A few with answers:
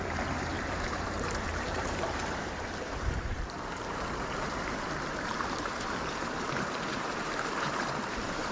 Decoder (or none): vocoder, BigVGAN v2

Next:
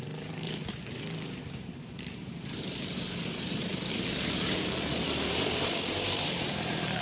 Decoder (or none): vocoder, BigVGAN v2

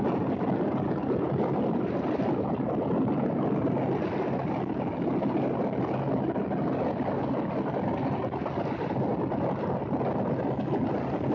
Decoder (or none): none